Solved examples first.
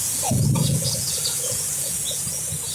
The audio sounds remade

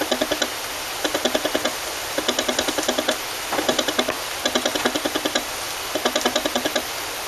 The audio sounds recorded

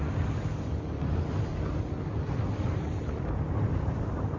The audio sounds recorded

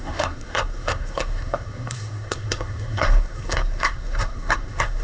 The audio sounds remade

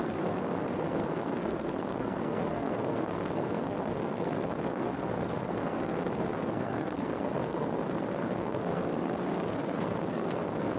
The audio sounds remade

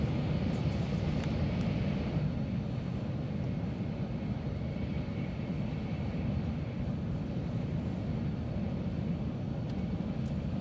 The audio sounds recorded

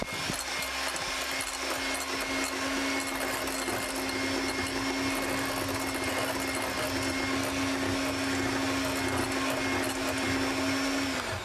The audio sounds recorded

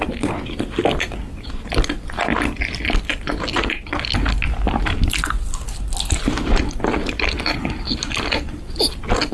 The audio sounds recorded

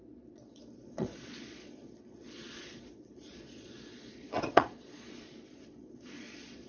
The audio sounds remade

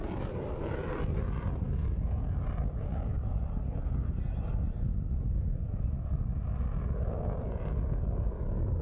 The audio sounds recorded